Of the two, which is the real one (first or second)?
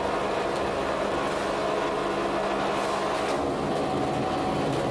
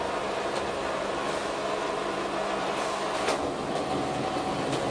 first